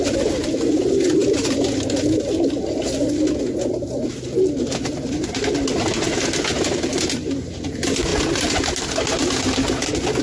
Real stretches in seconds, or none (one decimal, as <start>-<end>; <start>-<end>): 0.0-10.2